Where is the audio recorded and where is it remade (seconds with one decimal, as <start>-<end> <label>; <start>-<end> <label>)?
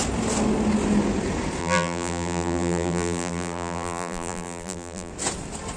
0.0-1.6 recorded; 1.6-5.1 remade; 5.1-5.8 recorded